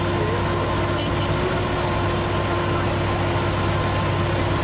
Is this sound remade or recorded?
recorded